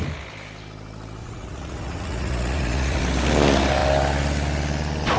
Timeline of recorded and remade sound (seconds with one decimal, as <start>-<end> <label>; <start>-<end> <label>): 0.0-1.2 recorded; 1.2-3.0 remade; 3.0-5.2 recorded